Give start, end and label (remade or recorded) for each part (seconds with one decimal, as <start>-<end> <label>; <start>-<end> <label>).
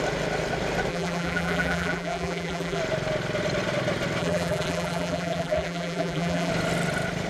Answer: 0.0-0.9 recorded; 0.9-2.8 remade; 2.8-4.2 recorded; 4.2-6.5 remade; 6.5-7.3 recorded